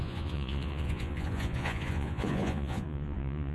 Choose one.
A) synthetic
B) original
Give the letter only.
A